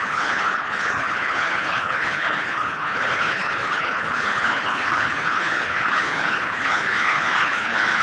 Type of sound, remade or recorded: remade